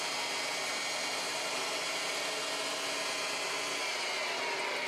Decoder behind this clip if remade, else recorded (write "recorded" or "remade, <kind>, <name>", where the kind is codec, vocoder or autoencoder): recorded